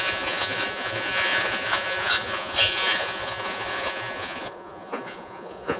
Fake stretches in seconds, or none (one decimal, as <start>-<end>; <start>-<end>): 0.0-5.8